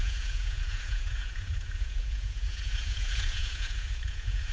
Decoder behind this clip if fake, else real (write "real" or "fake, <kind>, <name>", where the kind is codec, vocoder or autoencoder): fake, vocoder, Vocos